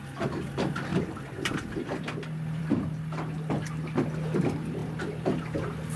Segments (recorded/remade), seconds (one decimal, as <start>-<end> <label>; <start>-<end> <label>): 0.0-6.0 recorded